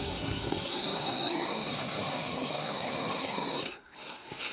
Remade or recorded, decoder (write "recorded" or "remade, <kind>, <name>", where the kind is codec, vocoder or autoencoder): remade, codec, SNAC